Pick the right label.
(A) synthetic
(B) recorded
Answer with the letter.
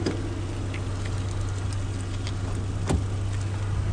B